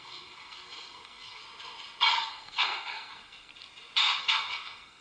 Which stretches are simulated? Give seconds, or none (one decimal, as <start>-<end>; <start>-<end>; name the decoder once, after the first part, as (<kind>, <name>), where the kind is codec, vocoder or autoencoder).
0.0-1.4 (codec, SNAC); 2.1-3.5; 4.2-5.0